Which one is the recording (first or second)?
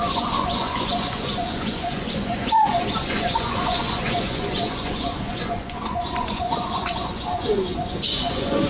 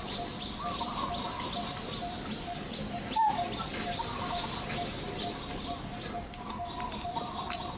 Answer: second